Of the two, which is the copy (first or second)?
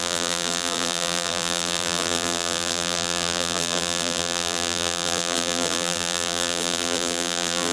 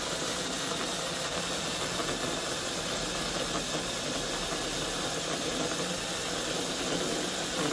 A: first